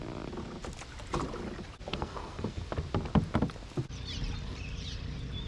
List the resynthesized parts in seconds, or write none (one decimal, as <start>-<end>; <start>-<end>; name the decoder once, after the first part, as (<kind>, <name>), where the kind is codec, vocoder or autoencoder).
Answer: 1.9-2.6 (codec, SNAC)